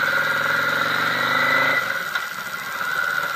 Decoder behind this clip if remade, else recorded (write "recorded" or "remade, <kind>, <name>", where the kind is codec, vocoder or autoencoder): recorded